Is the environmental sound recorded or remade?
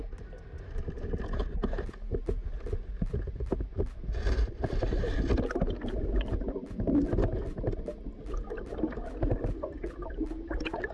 recorded